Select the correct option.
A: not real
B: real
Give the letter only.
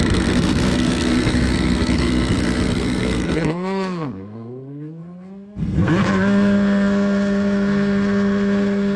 A